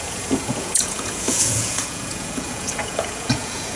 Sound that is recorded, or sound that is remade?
remade